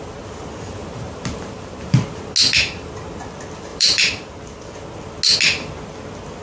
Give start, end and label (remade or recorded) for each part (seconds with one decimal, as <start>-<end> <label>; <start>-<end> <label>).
0.0-0.8 recorded; 0.8-2.2 remade; 2.2-3.7 recorded; 3.7-4.3 remade; 4.3-6.4 recorded